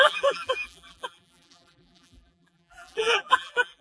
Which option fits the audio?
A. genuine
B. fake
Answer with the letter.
B